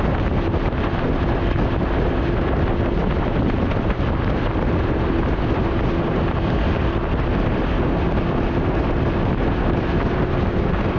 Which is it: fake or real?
real